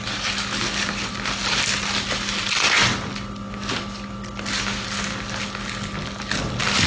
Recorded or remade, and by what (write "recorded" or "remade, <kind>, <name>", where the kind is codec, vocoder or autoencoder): recorded